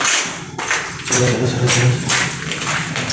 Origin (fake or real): fake